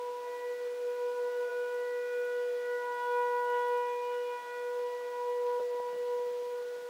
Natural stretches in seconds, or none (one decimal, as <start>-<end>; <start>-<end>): 0.0-6.9